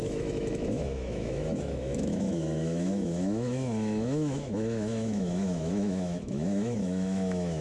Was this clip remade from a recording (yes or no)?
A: yes